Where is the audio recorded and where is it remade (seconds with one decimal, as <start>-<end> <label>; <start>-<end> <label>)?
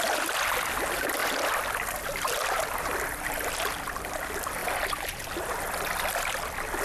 0.0-6.8 recorded